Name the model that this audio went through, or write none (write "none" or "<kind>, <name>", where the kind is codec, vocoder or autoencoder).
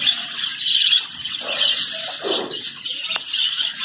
none